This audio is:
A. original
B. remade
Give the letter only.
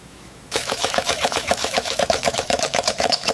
B